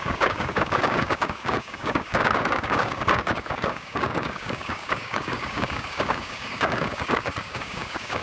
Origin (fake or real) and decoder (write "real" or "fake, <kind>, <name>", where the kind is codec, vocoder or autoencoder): fake, codec, DAC